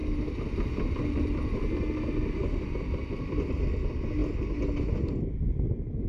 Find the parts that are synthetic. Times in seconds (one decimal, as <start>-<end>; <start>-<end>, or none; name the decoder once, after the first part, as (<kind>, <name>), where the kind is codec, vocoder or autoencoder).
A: 0.0-3.7 (vocoder, BigVGAN v2)